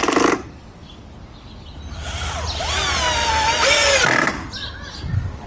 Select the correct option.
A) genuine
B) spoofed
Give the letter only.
A